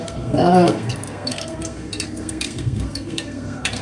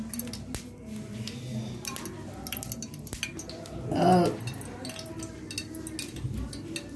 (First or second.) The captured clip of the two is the second